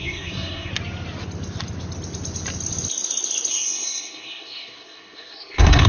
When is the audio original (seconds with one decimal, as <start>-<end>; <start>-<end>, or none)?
0.7-3.5